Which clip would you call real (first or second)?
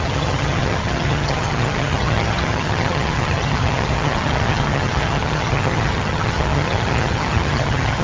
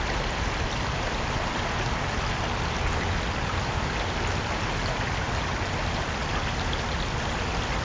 second